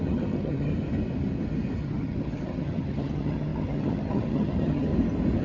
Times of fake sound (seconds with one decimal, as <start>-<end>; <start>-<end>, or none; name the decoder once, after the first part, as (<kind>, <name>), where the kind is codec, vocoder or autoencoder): 0.0-0.7 (vocoder, HiFi-GAN); 1.8-4.9